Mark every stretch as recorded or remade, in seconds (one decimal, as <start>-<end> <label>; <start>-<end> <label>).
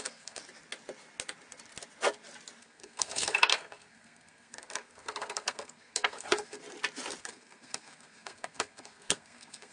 0.0-0.4 remade; 0.4-2.6 recorded; 2.6-6.6 remade; 6.6-7.2 recorded; 7.2-9.7 remade